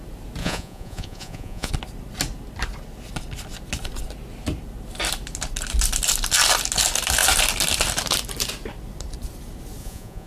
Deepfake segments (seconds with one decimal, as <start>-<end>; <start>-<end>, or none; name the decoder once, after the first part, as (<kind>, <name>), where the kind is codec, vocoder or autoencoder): 0.4-1.7 (vocoder, Vocos); 9.8-10.3